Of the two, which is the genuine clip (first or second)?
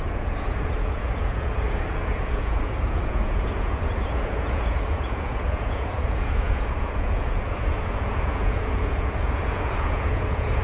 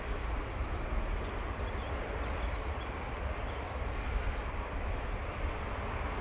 second